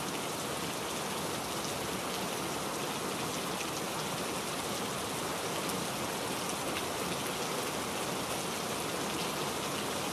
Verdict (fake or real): real